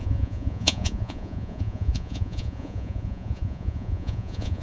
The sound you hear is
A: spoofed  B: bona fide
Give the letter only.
A